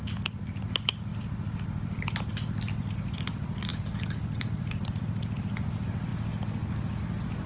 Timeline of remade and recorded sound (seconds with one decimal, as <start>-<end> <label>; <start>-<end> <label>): 0.0-3.7 recorded; 3.7-5.0 remade; 5.0-7.5 recorded